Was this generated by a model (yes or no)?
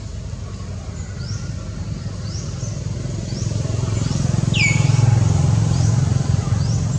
no